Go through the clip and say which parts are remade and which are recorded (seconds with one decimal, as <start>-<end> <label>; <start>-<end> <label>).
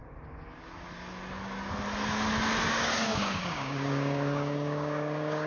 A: 0.0-2.7 recorded; 2.7-5.5 remade